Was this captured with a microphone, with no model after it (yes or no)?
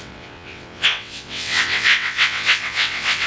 no